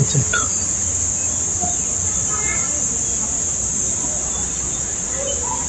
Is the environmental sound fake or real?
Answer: real